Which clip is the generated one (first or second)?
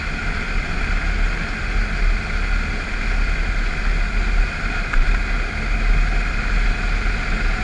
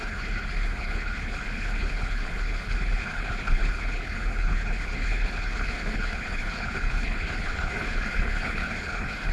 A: second